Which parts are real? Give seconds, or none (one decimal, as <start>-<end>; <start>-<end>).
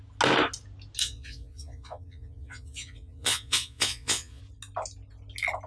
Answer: 0.0-1.0; 4.4-5.7